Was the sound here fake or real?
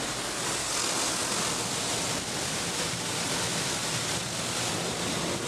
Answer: real